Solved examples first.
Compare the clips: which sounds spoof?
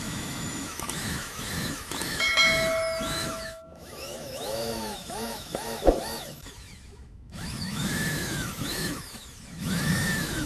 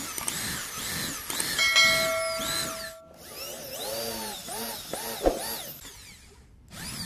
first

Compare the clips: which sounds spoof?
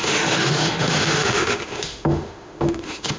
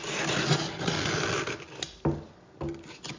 first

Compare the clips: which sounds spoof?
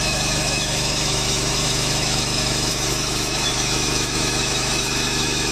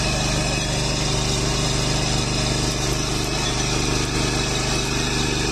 first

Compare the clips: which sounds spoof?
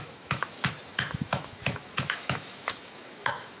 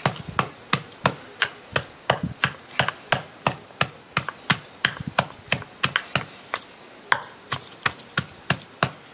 first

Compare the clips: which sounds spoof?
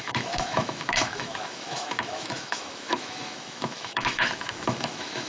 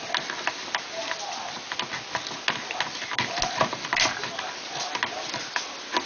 first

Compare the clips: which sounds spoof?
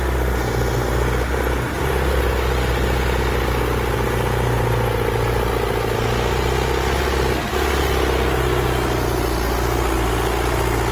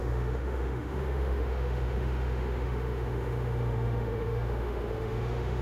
second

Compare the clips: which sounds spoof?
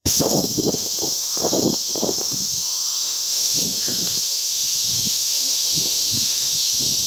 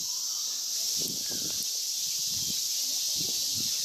first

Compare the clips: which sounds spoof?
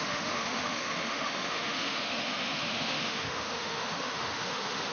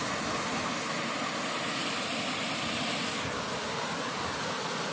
first